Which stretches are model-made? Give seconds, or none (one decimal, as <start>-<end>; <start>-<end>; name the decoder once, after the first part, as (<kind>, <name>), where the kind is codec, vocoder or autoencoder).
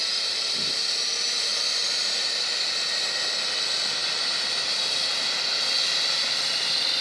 none